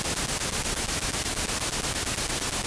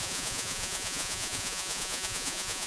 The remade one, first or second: second